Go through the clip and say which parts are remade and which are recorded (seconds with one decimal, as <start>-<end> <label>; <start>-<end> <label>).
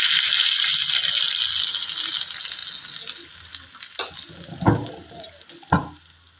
0.0-6.4 recorded